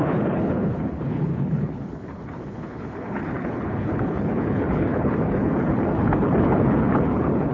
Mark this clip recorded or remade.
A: remade